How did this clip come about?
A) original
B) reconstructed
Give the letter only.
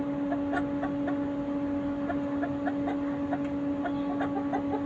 A